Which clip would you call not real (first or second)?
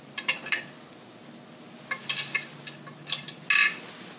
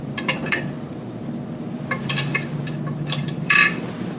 second